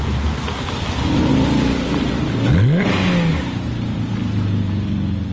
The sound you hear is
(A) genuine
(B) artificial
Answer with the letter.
A